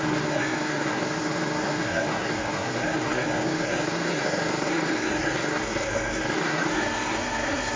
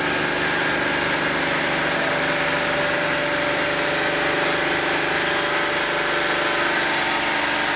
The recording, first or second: second